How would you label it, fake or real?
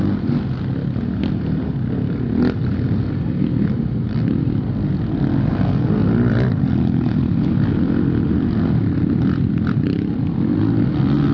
real